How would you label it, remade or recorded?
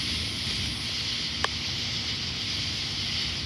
recorded